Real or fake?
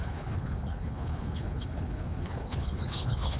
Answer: fake